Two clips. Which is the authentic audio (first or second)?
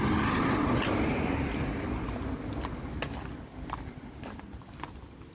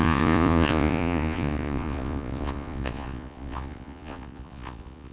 first